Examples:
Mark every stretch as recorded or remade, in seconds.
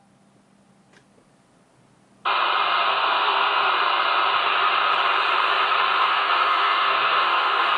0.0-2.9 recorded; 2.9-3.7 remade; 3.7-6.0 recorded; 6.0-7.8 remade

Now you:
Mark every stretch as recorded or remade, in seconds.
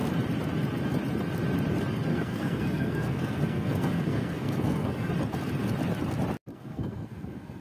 0.0-2.1 recorded; 2.1-5.1 remade; 5.1-6.5 recorded; 6.5-7.6 remade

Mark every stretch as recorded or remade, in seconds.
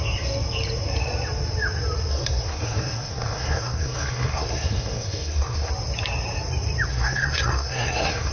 0.0-2.1 recorded; 2.1-5.7 remade; 5.7-6.9 recorded; 6.9-8.3 remade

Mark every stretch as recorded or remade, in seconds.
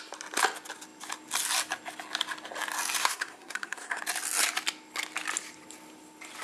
0.0-3.0 recorded; 3.0-4.0 remade; 4.0-6.4 recorded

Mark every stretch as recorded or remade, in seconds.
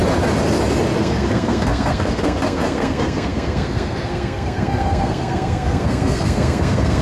0.0-1.0 recorded; 1.0-7.0 remade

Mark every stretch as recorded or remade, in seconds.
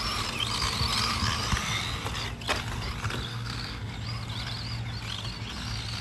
0.0-3.3 recorded; 3.3-3.9 remade; 3.9-6.0 recorded